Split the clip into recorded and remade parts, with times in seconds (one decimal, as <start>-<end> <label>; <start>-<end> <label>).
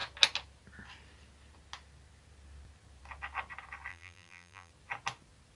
0.0-3.9 recorded; 3.9-4.7 remade; 4.7-5.6 recorded